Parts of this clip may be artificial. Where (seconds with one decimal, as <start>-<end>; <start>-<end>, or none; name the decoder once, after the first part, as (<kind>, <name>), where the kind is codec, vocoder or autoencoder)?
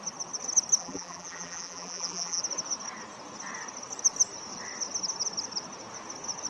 0.8-2.4 (vocoder, BigVGAN v2)